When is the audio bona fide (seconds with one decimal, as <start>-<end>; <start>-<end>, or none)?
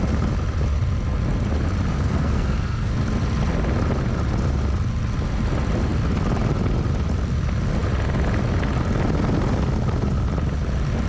0.0-1.9; 2.9-11.1